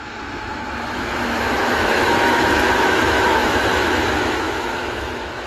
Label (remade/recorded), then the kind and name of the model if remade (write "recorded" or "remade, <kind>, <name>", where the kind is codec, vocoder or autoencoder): remade, autoencoder, DAC-VAE